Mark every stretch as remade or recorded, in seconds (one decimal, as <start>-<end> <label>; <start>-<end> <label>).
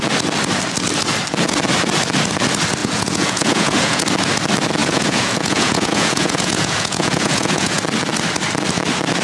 0.0-2.8 recorded; 2.8-4.0 remade; 4.0-4.8 recorded; 4.8-7.8 remade; 7.8-9.2 recorded